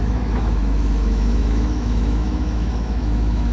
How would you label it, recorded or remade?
remade